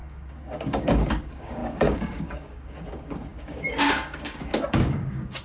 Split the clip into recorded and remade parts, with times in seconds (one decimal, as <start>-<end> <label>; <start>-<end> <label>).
0.0-5.4 remade